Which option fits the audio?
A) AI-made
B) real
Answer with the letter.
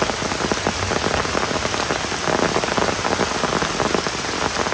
B